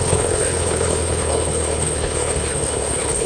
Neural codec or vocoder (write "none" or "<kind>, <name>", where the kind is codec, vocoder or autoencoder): codec, HILCodec